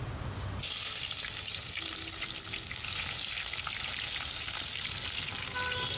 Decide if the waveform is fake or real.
real